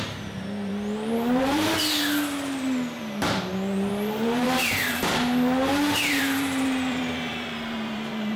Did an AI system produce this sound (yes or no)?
yes